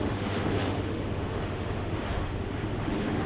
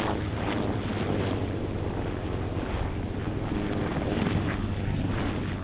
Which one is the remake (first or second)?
first